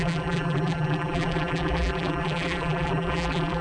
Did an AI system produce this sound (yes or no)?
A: yes